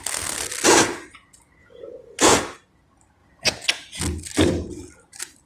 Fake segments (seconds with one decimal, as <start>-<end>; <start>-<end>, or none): 1.6-2.4; 3.2-4.0